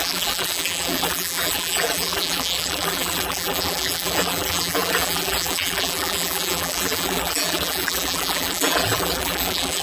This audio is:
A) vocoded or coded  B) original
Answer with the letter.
A